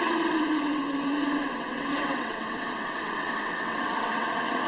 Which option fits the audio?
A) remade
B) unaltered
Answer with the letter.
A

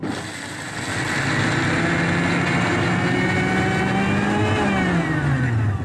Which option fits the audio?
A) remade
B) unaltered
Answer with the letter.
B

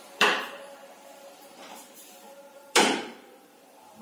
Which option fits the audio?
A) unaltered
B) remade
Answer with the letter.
B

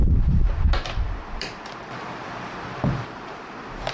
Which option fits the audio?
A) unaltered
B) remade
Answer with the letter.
B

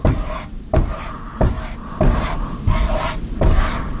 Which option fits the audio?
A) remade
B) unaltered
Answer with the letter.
A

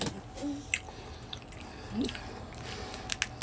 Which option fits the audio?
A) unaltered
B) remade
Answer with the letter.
A